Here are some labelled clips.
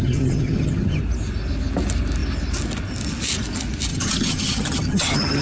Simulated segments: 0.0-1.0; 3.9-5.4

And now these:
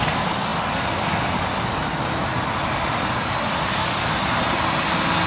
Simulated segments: none

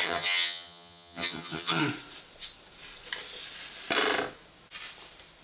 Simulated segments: 0.0-1.8

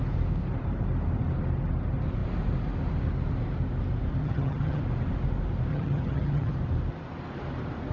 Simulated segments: 4.2-4.8; 5.7-6.5

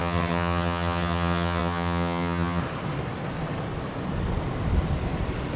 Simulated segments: 0.0-2.6

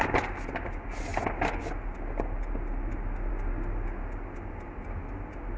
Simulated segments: none

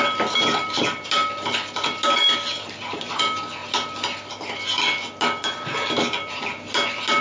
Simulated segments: none

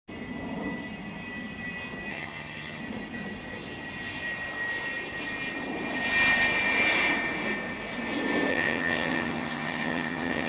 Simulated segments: 2.1-2.8; 8.5-10.5